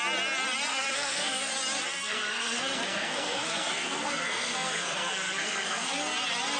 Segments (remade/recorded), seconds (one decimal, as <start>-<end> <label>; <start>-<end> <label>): 0.0-0.7 recorded; 0.7-1.5 remade; 1.5-1.9 recorded; 1.9-5.9 remade; 5.9-6.6 recorded